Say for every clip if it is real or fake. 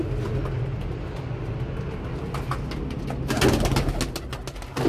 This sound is real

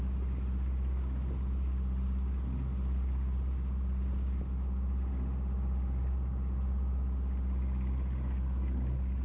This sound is real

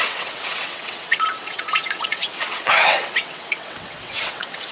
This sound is fake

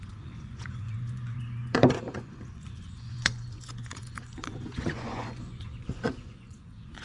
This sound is fake